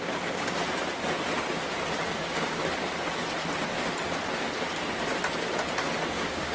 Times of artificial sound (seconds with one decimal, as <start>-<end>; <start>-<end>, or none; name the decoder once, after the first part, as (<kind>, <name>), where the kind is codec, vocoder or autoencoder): 0.0-0.6 (codec, DAC); 2.2-2.6; 6.1-6.5